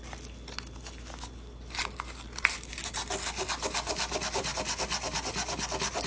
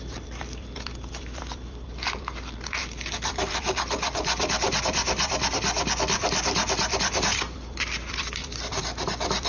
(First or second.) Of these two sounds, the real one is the first